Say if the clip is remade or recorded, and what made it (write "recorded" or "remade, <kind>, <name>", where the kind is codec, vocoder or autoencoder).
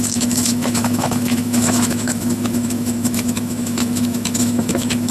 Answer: remade, autoencoder, DAC-VAE